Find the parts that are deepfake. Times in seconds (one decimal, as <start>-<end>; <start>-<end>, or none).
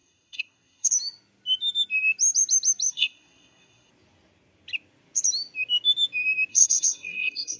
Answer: 0.0-0.9; 2.9-3.9; 6.5-7.6